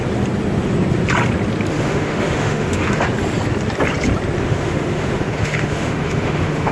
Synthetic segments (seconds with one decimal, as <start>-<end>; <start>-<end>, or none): 1.7-3.0; 4.4-6.7